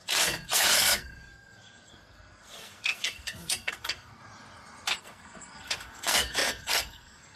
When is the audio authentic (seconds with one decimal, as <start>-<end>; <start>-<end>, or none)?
4.2-5.0